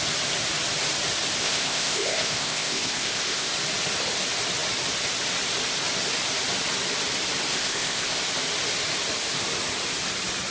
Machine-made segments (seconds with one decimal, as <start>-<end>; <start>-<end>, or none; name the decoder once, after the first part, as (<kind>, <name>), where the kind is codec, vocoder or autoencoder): 1.4-3.5 (codec, ZipCodec); 7.5-8.2